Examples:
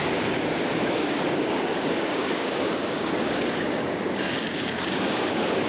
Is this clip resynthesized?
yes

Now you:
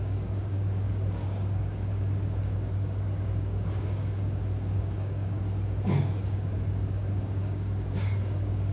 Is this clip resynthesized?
yes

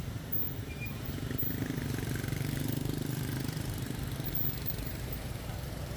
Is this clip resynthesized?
yes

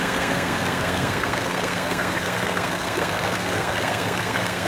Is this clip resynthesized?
yes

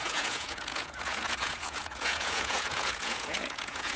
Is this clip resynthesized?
yes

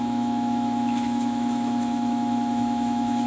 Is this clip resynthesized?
yes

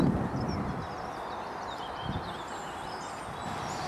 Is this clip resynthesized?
no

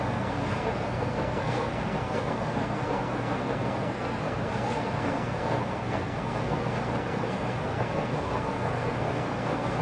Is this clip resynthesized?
yes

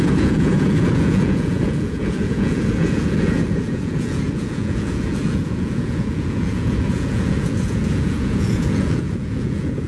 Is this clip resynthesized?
yes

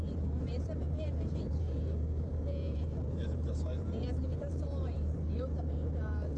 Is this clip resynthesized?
yes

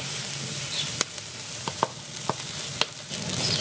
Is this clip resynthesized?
no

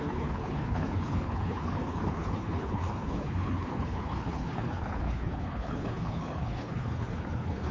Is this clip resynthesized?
yes